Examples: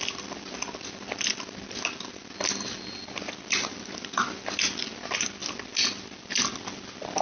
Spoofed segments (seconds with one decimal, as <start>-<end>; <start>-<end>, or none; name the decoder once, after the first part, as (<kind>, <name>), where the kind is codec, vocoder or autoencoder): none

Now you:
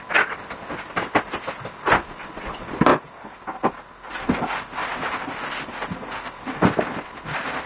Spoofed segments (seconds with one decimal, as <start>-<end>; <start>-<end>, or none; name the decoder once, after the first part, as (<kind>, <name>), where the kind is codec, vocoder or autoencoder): none

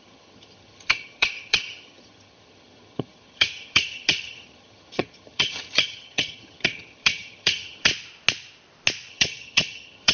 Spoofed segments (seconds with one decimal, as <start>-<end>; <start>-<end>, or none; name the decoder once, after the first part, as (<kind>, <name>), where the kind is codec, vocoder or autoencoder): 0.0-7.9 (vocoder, HiFi-GAN); 9.1-10.1

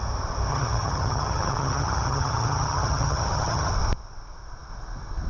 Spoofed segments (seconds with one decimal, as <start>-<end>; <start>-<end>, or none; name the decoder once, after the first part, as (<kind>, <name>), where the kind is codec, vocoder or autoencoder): 0.5-3.7 (vocoder, HiFi-GAN)

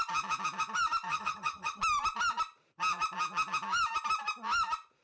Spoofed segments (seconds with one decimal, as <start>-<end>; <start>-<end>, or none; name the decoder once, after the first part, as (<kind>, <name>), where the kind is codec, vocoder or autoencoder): 1.1-1.8 (vocoder, HiFi-GAN)

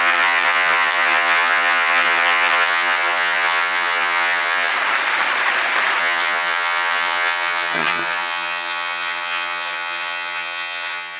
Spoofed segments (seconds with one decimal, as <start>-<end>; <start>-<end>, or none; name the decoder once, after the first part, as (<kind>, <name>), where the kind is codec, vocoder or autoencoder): 0.0-4.7 (vocoder, HiFi-GAN); 6.0-11.2